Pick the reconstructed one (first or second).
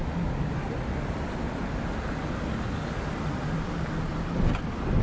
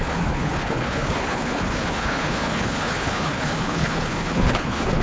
second